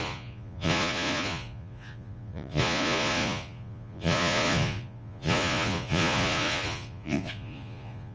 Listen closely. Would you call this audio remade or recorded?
remade